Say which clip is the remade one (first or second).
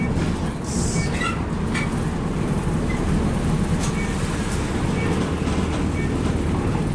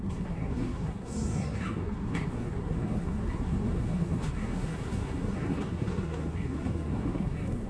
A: second